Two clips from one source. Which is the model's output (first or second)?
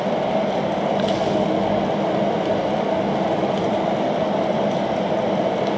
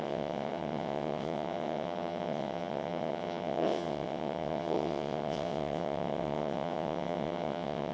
second